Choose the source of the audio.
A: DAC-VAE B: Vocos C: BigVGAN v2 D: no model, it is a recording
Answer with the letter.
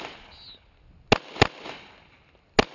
D